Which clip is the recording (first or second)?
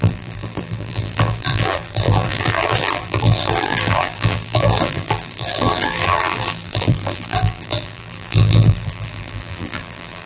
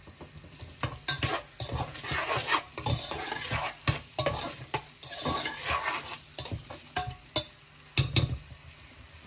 second